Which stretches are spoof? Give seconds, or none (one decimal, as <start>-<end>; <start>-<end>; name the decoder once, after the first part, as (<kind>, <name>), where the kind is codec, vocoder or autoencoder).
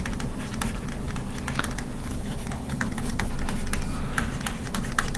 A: 2.0-3.3 (codec, HILCodec)